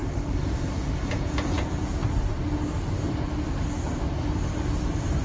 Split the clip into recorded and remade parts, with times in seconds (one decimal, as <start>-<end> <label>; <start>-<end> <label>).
0.0-1.1 recorded; 1.1-2.0 remade; 2.0-5.2 recorded